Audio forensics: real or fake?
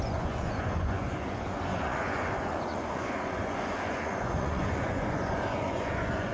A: fake